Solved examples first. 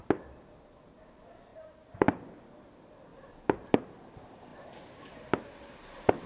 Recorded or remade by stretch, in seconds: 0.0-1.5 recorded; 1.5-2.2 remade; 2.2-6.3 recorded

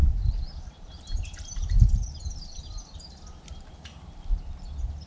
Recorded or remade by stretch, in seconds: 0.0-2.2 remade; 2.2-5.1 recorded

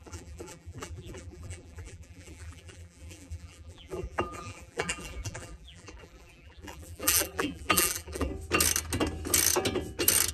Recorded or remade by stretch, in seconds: 0.0-8.3 remade; 8.3-10.3 recorded